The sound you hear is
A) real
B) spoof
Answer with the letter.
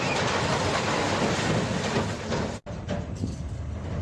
A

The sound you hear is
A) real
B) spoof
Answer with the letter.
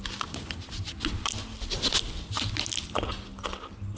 A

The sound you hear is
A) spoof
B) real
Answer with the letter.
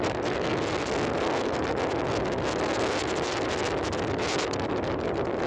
B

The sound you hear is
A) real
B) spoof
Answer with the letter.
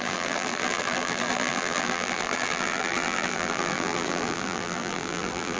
B